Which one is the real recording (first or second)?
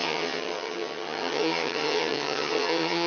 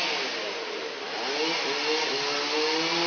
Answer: second